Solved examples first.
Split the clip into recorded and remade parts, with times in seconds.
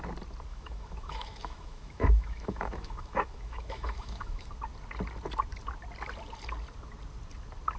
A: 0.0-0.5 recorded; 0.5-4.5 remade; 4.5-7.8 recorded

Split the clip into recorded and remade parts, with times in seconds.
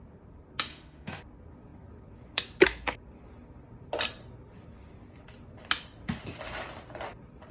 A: 0.0-0.7 recorded; 0.7-1.2 remade; 1.2-7.5 recorded